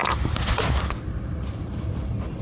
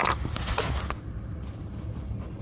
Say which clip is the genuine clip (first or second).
second